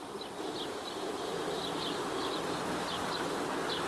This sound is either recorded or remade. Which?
recorded